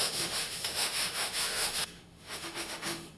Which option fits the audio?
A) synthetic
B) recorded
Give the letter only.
A